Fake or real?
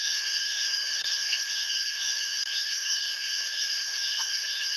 fake